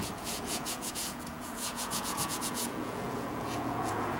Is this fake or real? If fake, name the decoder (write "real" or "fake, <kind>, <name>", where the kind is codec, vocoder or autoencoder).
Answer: fake, vocoder, Vocos